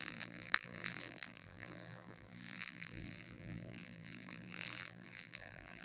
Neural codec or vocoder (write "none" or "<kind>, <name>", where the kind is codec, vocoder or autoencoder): vocoder, BigVGAN v2